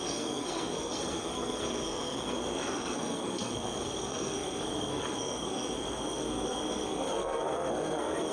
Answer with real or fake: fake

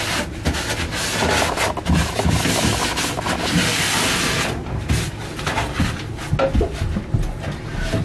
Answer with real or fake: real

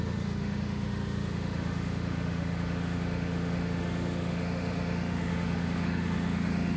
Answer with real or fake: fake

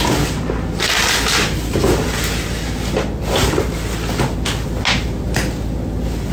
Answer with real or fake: real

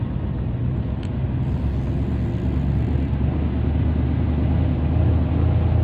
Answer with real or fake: real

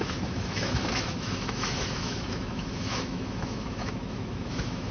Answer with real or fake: fake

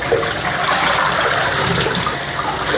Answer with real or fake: real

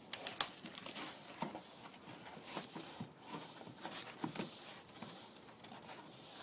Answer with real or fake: real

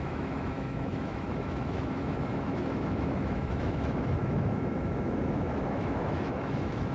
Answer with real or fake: fake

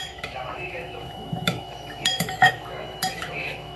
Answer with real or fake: fake